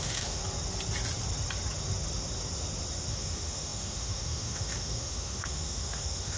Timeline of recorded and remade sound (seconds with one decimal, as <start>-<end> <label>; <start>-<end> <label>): 0.0-0.4 remade; 0.4-3.1 recorded; 3.1-6.4 remade

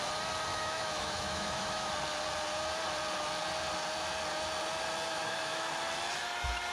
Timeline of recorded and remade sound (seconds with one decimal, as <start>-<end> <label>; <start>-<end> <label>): 0.0-0.5 recorded; 0.5-1.9 remade; 1.9-5.1 recorded; 5.1-5.7 remade; 5.7-6.7 recorded

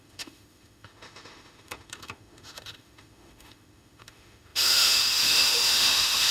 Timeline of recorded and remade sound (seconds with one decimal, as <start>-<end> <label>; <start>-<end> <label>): 0.0-6.3 remade

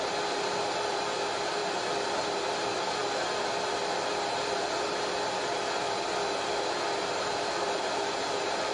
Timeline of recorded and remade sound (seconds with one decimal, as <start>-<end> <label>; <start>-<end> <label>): 0.0-8.7 recorded

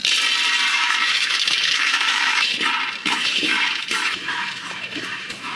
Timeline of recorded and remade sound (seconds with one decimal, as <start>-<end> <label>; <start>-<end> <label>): 0.0-0.7 recorded; 0.7-2.5 remade; 2.5-3.0 recorded; 3.0-5.6 remade

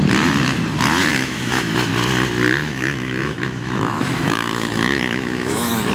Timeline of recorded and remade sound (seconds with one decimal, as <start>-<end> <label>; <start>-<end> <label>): 0.0-1.1 recorded; 1.1-1.9 remade; 1.9-2.6 recorded; 2.6-5.9 remade

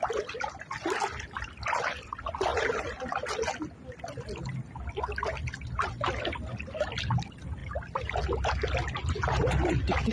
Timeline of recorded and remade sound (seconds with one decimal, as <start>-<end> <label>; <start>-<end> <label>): 0.0-10.1 recorded

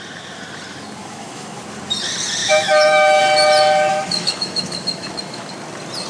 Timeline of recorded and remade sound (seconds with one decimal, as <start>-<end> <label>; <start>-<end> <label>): 0.0-1.0 recorded; 1.0-1.6 remade; 1.6-2.4 recorded; 2.4-3.2 remade; 3.2-3.9 recorded; 3.9-5.5 remade; 5.5-6.1 recorded